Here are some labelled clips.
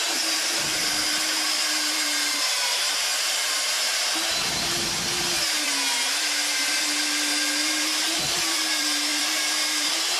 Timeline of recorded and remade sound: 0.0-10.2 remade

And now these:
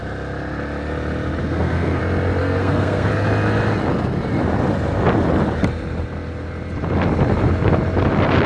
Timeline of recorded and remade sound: 0.0-1.4 recorded; 1.4-2.0 remade; 2.0-2.4 recorded; 2.4-3.1 remade; 3.1-8.5 recorded

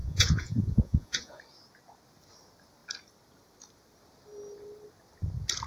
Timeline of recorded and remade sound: 0.0-1.4 remade; 1.4-5.7 recorded